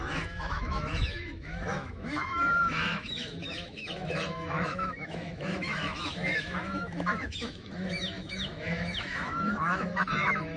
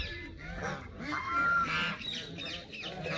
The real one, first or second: second